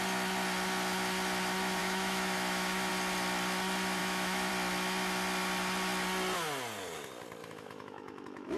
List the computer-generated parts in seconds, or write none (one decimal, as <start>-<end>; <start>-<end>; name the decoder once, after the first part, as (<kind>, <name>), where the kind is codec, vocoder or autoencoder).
1.8-2.9 (autoencoder, DAC-VAE); 4.0-4.5; 7.4-8.6